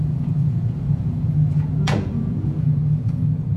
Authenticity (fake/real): fake